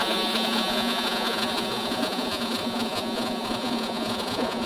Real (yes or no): no